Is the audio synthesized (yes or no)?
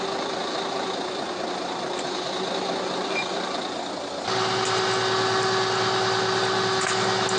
no